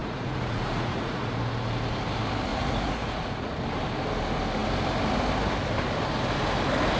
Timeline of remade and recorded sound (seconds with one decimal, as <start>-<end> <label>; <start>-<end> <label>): 0.0-1.3 remade; 1.3-2.5 recorded; 2.5-3.6 remade; 3.6-7.0 recorded